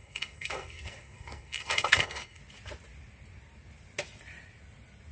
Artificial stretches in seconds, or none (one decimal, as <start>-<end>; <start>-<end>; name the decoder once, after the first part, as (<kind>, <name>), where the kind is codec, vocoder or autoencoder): 0.0-2.4 (codec, SNAC)